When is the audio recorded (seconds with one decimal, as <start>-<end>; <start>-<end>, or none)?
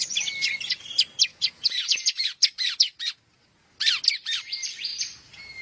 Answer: 0.0-1.3; 3.1-5.6